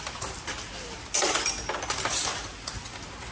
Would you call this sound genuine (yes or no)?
yes